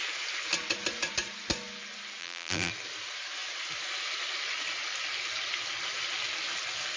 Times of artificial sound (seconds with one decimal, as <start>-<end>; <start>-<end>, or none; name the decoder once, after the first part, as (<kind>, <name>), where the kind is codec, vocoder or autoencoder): 2.2-2.7 (vocoder, BigVGAN v2)